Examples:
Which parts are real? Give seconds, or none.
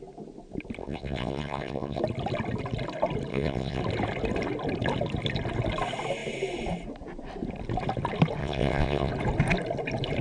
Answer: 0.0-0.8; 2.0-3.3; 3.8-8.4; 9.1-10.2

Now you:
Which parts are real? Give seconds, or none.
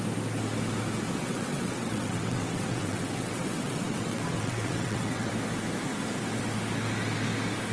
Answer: 0.0-1.2; 5.3-7.7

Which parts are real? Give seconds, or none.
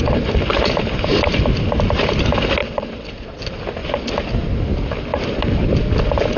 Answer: 0.0-2.6; 3.4-6.4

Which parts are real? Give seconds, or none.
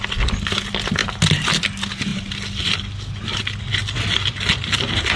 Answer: 0.0-5.2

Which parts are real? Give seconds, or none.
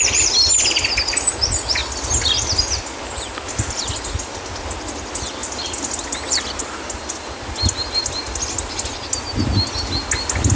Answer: 0.0-10.6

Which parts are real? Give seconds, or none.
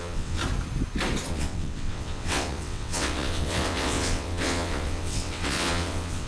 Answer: 0.4-1.3